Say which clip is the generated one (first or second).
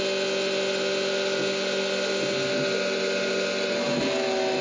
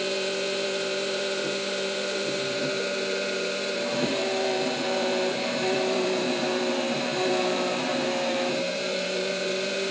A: second